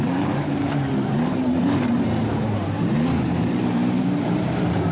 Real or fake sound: fake